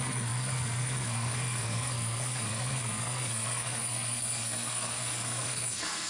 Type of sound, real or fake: fake